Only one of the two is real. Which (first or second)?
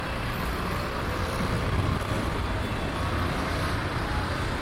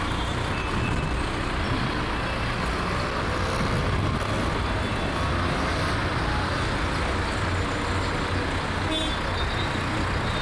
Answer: second